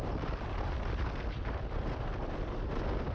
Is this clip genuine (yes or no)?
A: no